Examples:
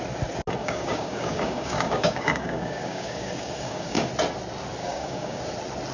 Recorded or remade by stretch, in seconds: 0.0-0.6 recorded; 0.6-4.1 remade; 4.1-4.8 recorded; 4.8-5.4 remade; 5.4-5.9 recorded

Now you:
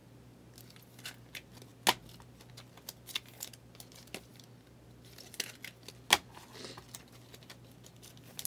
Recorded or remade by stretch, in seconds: 0.0-8.5 recorded

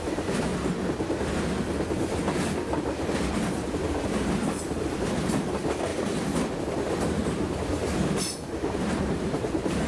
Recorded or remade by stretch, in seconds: 0.0-0.5 remade; 0.5-5.3 recorded; 5.3-5.9 remade; 5.9-6.6 recorded; 6.6-7.2 remade; 7.2-7.7 recorded; 7.7-9.9 remade

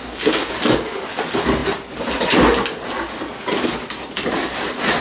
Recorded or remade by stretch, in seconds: 0.0-0.5 remade; 0.5-5.0 recorded

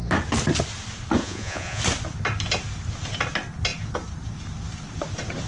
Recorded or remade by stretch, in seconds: 0.0-1.2 recorded; 1.2-1.8 remade; 1.8-5.5 recorded